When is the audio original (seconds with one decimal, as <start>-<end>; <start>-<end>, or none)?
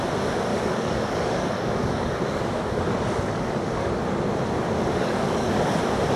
0.0-0.5; 4.2-5.0; 5.8-6.2